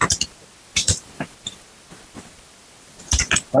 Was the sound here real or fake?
real